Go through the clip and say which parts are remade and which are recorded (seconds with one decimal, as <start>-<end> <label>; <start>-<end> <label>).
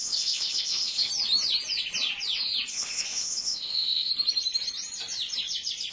0.0-1.1 remade; 1.1-2.7 recorded; 2.7-4.1 remade; 4.1-5.9 recorded